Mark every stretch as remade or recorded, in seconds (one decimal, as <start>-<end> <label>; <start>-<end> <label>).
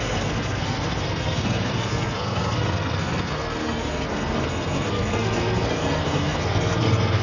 0.0-7.2 remade